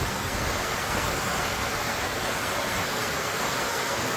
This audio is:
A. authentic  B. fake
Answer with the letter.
B